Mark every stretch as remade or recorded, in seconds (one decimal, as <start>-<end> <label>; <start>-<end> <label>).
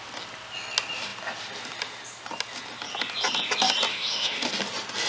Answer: 0.0-3.9 recorded; 3.9-4.5 remade; 4.5-5.1 recorded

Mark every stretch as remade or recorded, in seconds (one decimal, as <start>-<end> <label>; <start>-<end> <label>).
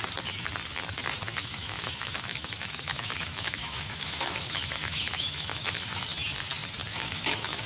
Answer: 0.0-1.4 recorded; 1.4-6.0 remade; 6.0-6.9 recorded; 6.9-7.7 remade